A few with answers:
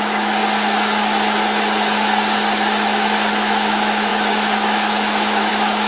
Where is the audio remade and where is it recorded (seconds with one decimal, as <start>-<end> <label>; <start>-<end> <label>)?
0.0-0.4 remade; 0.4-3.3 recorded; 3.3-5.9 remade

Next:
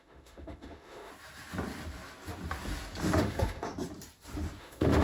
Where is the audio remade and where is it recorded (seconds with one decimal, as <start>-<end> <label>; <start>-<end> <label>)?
0.0-1.1 remade; 1.1-3.2 recorded; 3.2-3.7 remade; 3.7-4.6 recorded; 4.6-5.0 remade

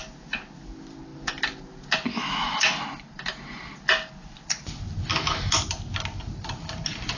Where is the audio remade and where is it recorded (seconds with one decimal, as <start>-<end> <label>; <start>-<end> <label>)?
0.0-2.1 recorded; 2.1-2.8 remade; 2.8-5.1 recorded; 5.1-5.6 remade; 5.6-7.2 recorded